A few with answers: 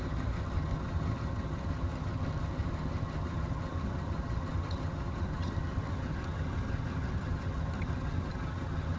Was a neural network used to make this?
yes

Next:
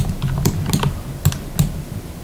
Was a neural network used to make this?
no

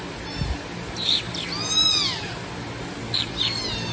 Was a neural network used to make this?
no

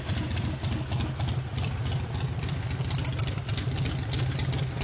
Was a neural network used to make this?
no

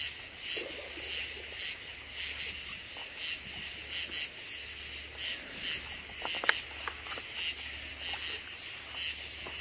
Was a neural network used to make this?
no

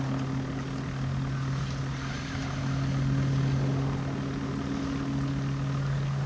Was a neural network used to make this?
no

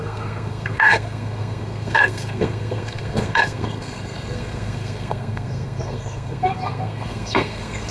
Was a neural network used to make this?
yes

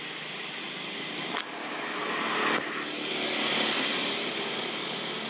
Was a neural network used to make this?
no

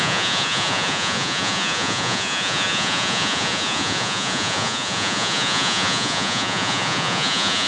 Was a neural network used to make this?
yes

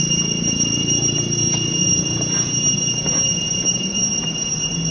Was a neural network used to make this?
no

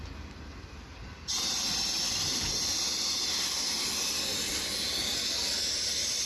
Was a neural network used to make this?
no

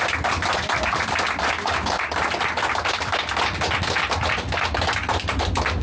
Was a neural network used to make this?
no